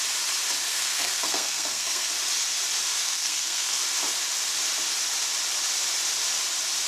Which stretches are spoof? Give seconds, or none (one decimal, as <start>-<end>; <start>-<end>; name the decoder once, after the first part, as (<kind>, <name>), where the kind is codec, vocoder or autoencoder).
0.7-2.1 (codec, SNAC); 3.0-3.8